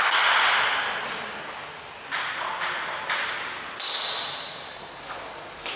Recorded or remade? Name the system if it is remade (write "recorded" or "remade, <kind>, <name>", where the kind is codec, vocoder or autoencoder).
recorded